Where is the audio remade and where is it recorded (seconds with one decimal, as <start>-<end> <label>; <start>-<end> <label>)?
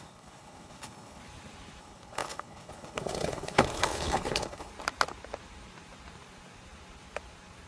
0.0-1.2 remade; 1.2-1.8 recorded; 1.8-4.7 remade; 4.7-7.7 recorded